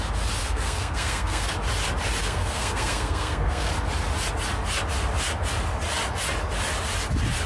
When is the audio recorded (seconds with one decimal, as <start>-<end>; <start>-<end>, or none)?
0.0-0.4; 1.5-2.2; 3.7-7.5